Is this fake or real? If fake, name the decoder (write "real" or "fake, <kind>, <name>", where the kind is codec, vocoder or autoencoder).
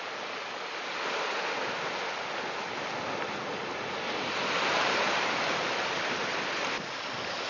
real